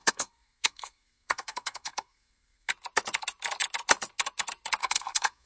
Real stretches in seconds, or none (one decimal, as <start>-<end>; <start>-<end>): 2.7-4.8